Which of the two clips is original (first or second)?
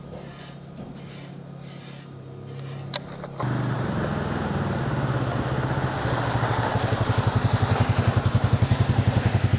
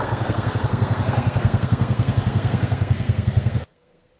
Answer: first